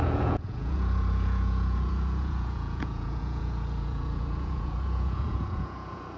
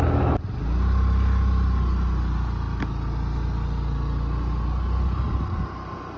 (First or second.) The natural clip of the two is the second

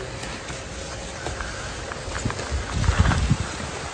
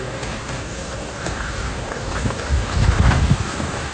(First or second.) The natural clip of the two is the first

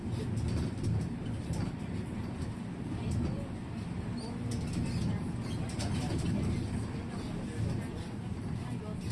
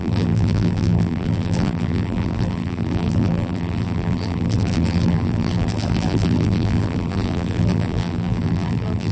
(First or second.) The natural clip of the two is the first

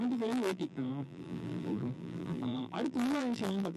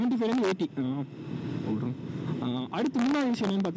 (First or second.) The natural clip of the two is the second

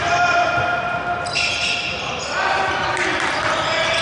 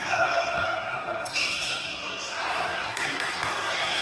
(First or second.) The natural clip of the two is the first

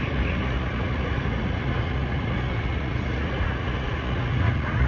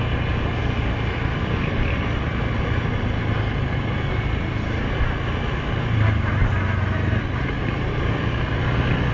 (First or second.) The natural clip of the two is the second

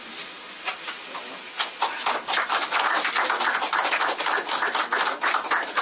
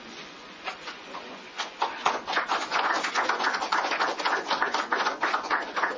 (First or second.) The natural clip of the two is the first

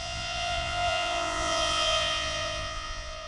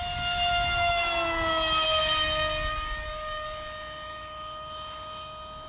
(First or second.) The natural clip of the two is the second